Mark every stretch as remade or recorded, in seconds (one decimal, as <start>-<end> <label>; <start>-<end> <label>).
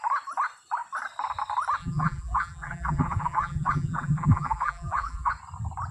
0.0-1.8 recorded; 1.8-5.3 remade; 5.3-5.9 recorded